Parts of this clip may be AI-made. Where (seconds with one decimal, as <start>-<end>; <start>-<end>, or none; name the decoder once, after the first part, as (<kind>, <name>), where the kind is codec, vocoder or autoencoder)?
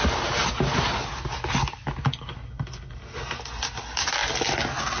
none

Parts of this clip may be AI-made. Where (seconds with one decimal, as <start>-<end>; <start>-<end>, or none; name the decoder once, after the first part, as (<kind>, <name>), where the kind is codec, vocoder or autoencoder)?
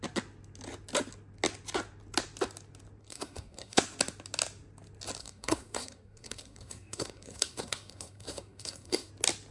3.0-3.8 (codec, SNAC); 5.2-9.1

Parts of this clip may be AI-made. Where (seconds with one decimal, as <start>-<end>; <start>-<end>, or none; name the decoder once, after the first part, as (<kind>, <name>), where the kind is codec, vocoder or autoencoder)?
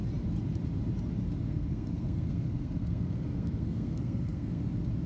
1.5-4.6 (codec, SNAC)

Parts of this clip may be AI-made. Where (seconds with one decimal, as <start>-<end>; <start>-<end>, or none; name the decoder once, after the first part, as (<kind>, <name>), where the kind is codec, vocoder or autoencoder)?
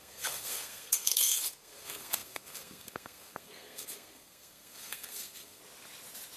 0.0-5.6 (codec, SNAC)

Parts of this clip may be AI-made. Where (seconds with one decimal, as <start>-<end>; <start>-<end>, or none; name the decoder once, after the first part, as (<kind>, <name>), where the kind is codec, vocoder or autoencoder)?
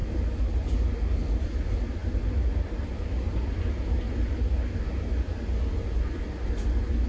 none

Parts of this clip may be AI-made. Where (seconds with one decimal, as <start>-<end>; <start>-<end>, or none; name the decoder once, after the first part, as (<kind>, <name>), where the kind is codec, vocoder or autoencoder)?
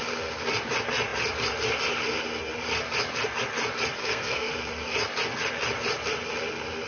4.0-4.5 (codec, SNAC)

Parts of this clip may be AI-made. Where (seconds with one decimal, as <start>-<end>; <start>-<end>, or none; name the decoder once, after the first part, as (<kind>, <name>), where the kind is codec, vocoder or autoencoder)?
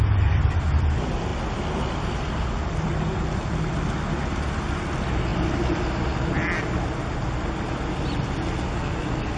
none